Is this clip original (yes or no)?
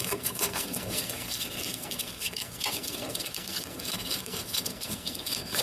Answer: no